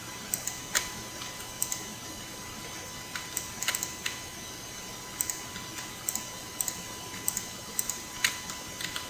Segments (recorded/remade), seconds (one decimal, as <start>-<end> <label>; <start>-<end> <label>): 0.0-9.1 recorded